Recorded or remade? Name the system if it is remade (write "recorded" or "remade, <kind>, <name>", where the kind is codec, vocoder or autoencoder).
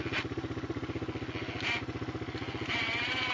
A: recorded